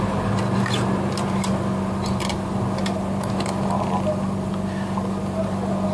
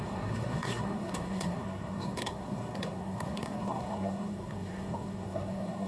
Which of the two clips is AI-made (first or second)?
second